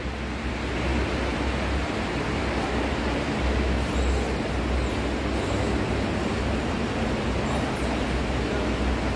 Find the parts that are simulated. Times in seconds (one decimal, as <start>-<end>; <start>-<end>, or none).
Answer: none